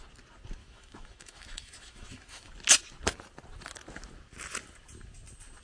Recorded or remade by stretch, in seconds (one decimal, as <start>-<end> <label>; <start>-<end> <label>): 0.0-0.6 recorded; 0.6-2.5 remade; 2.5-5.6 recorded